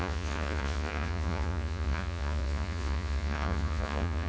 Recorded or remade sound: remade